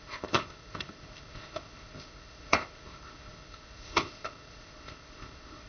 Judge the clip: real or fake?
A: fake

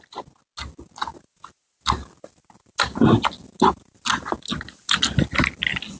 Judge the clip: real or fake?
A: real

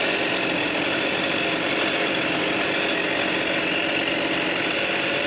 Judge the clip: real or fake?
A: real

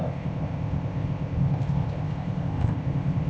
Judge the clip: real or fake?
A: fake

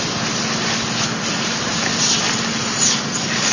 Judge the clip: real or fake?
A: real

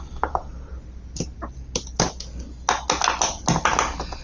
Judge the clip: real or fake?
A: real